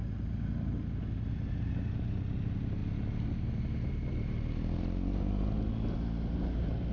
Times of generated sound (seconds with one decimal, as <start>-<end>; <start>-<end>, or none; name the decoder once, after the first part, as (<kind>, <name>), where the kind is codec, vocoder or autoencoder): none